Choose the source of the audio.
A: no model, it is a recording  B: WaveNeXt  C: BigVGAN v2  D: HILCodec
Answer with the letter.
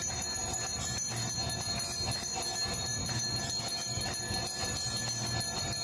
A